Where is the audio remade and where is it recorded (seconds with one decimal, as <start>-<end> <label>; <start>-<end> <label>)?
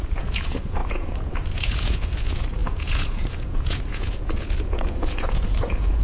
0.0-6.0 remade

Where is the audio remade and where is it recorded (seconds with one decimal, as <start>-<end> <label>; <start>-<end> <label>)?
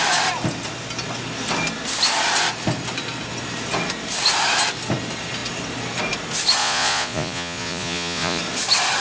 0.0-6.6 recorded; 6.6-8.4 remade; 8.4-9.0 recorded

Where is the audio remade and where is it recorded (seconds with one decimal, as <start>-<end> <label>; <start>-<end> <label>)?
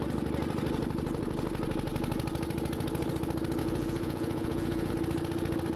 0.0-3.6 recorded; 3.6-4.9 remade; 4.9-5.8 recorded